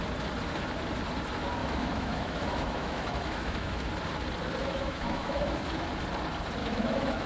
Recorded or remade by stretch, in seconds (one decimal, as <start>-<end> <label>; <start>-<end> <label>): 0.0-1.6 recorded; 1.6-3.9 remade; 3.9-4.6 recorded; 4.6-5.9 remade; 5.9-6.6 recorded; 6.6-7.3 remade